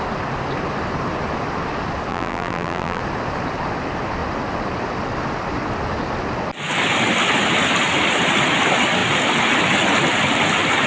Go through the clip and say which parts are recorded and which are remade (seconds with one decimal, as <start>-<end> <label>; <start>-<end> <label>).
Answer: 0.0-2.1 recorded; 2.1-3.0 remade; 3.0-10.9 recorded